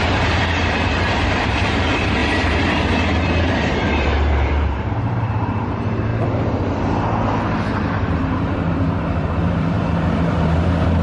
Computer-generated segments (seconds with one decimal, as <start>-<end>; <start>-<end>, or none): 0.0-6.1; 7.3-11.0

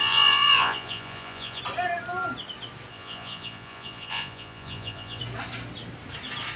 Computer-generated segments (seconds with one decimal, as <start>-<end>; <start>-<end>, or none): 0.0-1.6; 2.9-5.2

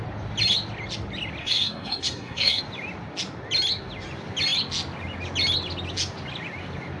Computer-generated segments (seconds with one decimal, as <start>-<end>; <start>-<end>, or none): 1.4-2.6